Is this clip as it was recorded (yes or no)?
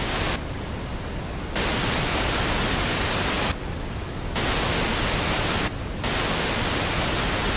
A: yes